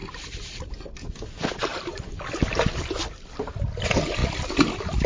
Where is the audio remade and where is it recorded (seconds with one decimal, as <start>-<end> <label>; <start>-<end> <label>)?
0.0-0.6 remade; 0.6-1.7 recorded; 1.7-3.5 remade; 3.5-5.1 recorded